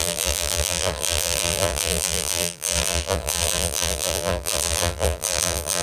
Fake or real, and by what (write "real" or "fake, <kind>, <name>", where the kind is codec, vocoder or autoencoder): fake, vocoder, BigVGAN v2